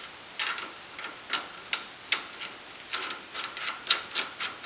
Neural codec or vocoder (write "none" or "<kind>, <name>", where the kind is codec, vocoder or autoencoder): none